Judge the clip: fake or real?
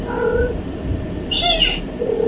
real